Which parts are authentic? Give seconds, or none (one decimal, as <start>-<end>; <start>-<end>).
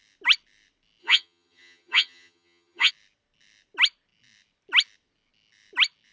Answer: 0.0-1.0; 2.9-6.1